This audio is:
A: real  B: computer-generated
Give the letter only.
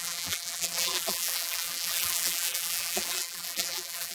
B